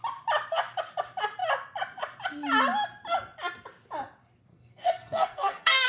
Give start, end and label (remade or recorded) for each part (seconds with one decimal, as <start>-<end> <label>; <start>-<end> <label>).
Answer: 0.0-4.5 recorded; 4.5-5.9 remade